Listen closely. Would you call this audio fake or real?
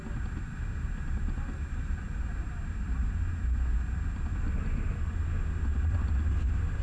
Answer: real